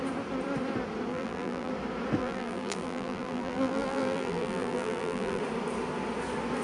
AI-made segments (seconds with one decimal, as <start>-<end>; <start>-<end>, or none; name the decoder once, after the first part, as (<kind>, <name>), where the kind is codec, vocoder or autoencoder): 1.1-1.7 (vocoder, BigVGAN v2); 2.2-5.4